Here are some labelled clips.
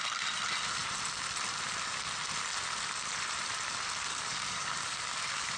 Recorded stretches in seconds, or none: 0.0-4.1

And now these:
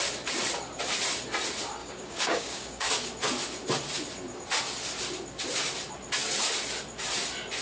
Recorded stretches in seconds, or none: 0.0-1.8; 2.9-7.6